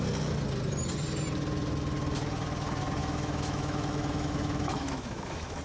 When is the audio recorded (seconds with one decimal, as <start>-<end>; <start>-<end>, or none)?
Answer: 0.0-3.0